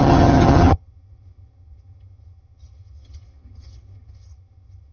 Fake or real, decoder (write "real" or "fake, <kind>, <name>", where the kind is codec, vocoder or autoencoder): fake, vocoder, HiFi-GAN